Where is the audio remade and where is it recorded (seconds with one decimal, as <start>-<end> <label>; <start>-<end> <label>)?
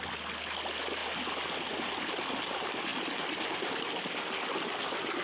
0.0-5.2 recorded